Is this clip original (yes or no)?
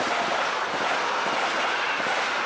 yes